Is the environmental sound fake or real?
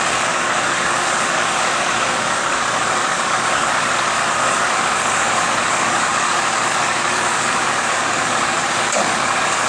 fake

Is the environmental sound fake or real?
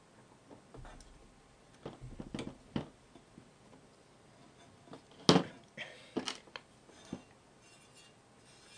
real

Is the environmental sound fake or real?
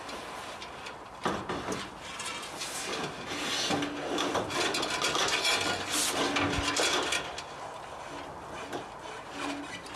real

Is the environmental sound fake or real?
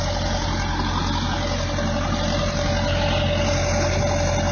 real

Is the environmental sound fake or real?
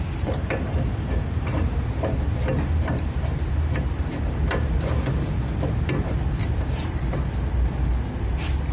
fake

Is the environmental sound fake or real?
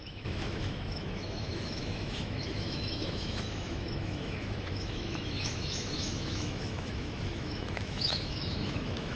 fake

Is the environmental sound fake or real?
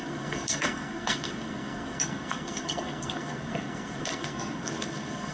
fake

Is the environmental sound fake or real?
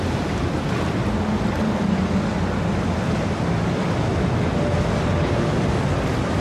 real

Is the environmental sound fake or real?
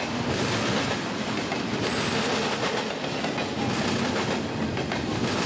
real